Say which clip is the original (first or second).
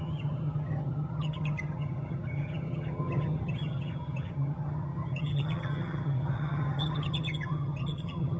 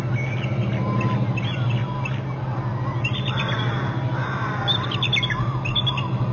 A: second